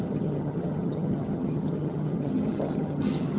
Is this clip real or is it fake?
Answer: fake